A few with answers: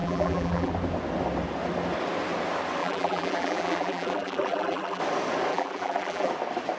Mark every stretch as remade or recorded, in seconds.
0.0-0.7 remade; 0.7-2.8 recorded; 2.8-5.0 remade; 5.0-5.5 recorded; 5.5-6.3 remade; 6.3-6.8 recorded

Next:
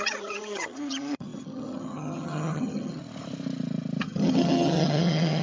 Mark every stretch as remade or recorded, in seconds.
0.0-3.0 remade; 3.0-4.0 recorded; 4.0-5.4 remade

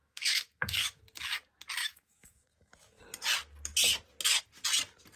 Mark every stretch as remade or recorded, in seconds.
0.0-1.0 remade; 1.0-1.8 recorded; 1.8-3.0 remade; 3.0-5.2 recorded

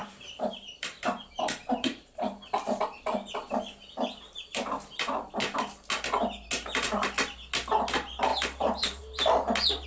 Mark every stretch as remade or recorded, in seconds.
0.0-2.8 remade; 2.8-8.3 recorded; 8.3-9.0 remade; 9.0-9.9 recorded

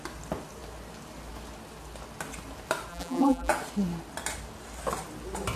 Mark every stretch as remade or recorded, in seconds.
0.0-2.9 recorded; 2.9-3.5 remade; 3.5-5.6 recorded

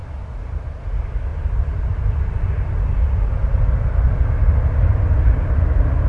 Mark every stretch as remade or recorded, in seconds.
0.0-0.9 remade; 0.9-1.3 recorded; 1.3-4.4 remade; 4.4-6.1 recorded

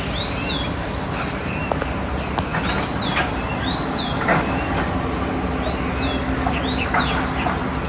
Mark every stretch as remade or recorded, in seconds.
0.0-7.9 recorded

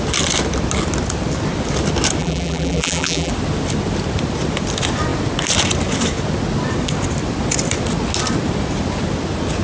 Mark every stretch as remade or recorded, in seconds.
0.0-2.2 recorded; 2.2-3.3 remade; 3.3-9.6 recorded